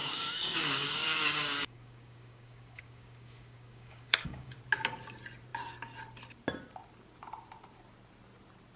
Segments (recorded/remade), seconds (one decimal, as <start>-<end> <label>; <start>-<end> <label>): 0.0-4.6 remade; 4.6-8.8 recorded